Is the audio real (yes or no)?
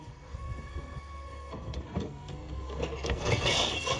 no